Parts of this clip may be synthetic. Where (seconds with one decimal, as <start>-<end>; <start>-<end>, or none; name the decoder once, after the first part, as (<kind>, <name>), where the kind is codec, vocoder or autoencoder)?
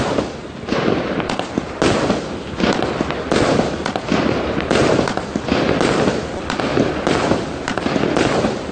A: none